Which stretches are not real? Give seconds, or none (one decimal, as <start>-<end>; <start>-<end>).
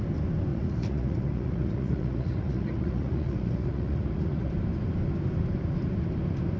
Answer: 0.5-4.5